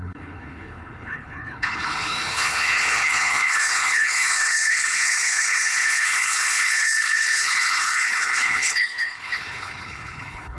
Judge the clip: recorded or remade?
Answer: remade